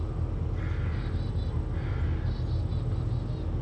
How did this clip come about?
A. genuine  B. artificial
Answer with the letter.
A